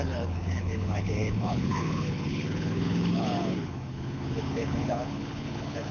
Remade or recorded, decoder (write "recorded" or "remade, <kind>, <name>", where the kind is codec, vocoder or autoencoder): remade, codec, HILCodec